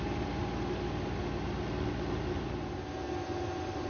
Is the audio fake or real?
real